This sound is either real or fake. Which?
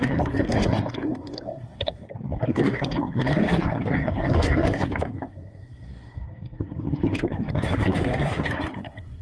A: fake